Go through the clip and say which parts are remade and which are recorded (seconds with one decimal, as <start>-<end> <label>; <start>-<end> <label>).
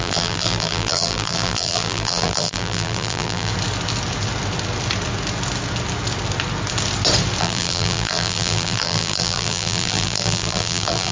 0.0-3.5 remade; 3.5-7.4 recorded; 7.4-11.1 remade